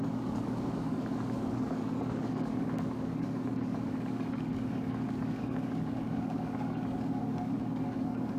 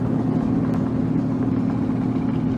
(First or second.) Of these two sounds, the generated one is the first